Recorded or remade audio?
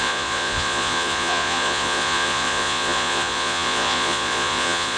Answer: remade